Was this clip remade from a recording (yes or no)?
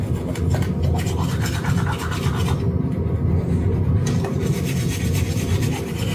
no